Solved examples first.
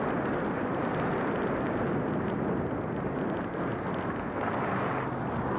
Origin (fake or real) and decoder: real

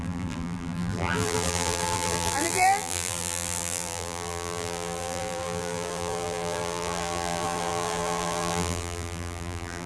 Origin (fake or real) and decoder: fake, vocoder, BigVGAN v2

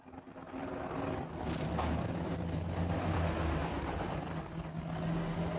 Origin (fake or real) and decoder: real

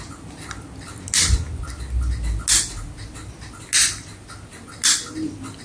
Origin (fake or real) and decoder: real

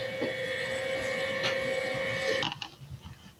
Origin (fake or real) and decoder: real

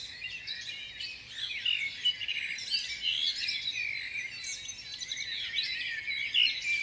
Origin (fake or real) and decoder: real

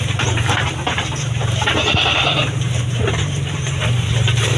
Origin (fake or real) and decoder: fake, vocoder, BigVGAN v2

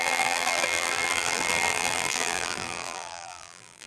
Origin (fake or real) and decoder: fake, vocoder, BigVGAN v2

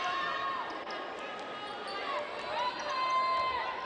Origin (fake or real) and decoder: real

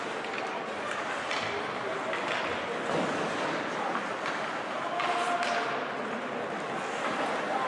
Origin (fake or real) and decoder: real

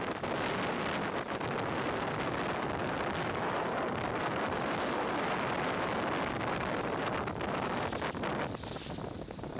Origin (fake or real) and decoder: real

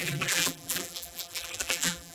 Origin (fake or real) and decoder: fake, vocoder, BigVGAN v2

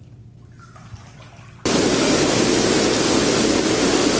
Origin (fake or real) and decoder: real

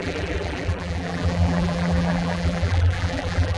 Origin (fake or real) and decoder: fake, vocoder, BigVGAN v2